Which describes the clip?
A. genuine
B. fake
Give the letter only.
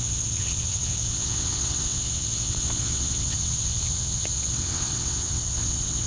B